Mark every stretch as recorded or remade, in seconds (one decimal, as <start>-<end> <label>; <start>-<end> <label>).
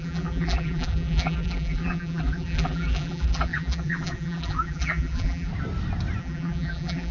0.0-5.5 remade; 5.5-6.2 recorded; 6.2-7.1 remade